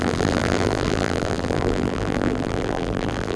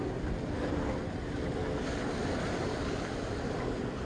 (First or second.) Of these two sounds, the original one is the second